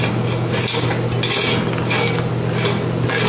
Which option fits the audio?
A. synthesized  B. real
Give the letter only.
B